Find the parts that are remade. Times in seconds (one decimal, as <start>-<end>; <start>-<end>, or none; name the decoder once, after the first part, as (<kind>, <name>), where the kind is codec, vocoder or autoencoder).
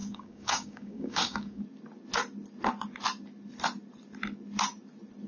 0.0-1.6 (codec, DAC)